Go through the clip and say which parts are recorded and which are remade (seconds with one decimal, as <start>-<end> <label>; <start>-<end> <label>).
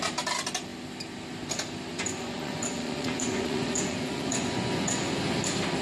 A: 0.0-1.9 recorded; 1.9-5.2 remade; 5.2-5.8 recorded